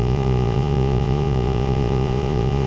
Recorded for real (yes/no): no